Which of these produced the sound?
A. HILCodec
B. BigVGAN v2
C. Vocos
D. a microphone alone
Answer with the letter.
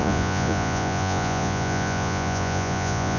C